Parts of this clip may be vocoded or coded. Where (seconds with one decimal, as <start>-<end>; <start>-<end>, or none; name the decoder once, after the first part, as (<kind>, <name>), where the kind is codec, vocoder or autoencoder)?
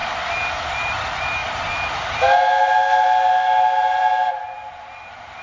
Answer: none